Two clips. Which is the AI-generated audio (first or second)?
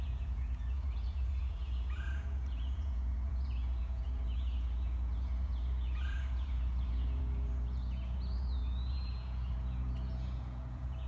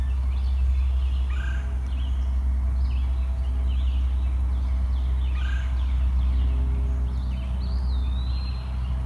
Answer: first